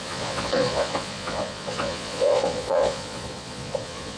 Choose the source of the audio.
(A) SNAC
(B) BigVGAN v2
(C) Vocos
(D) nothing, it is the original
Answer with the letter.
C